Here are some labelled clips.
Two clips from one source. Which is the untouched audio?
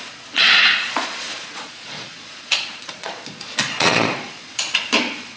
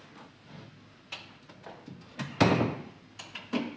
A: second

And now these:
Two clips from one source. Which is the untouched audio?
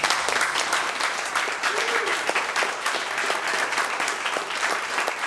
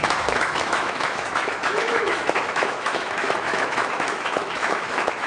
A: first